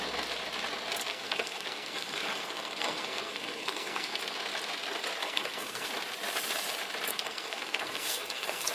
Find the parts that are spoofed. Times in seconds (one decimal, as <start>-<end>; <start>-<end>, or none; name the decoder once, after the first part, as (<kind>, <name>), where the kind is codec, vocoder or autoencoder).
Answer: 1.1-4.2 (codec, SNAC); 5.2-5.9; 7.1-8.7